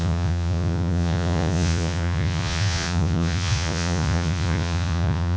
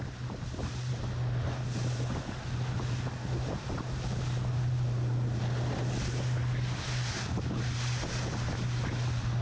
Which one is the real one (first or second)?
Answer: second